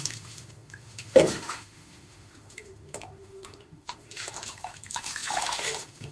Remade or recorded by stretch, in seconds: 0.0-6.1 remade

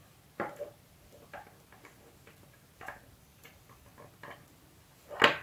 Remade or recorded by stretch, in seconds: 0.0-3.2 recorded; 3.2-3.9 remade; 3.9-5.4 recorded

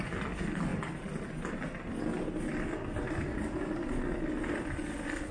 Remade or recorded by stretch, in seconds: 0.0-5.3 recorded

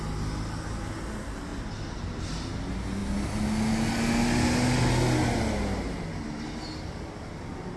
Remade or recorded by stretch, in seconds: 0.0-7.8 recorded

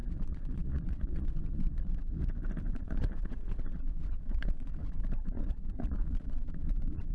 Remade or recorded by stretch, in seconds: 0.0-2.1 remade; 2.1-2.7 recorded; 2.7-7.1 remade

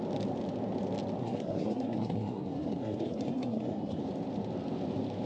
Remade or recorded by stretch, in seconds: 0.0-1.2 recorded; 1.2-4.0 remade; 4.0-5.3 recorded